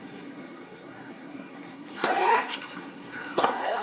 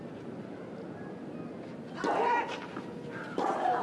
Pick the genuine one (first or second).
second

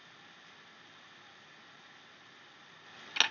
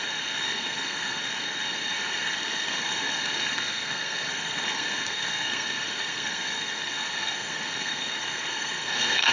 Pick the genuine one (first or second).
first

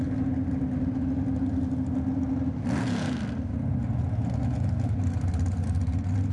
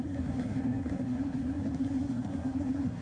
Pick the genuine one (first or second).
first